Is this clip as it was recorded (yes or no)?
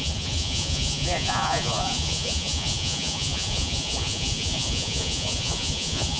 no